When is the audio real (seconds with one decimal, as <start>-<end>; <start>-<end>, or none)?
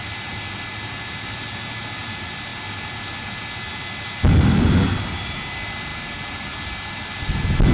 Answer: 0.0-7.7